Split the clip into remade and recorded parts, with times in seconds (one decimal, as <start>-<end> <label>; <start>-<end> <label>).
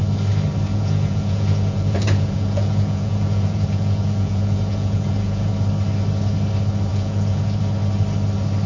0.0-0.7 recorded; 0.7-5.5 remade; 5.5-6.9 recorded; 6.9-7.6 remade; 7.6-8.7 recorded